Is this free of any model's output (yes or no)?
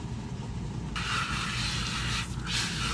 yes